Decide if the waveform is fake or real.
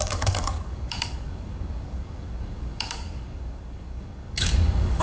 fake